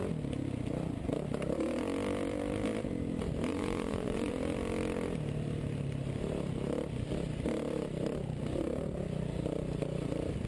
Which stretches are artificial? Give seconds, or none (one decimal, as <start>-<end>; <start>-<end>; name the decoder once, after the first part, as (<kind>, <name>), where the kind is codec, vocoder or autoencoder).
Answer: 3.5-4.3 (vocoder, Vocos)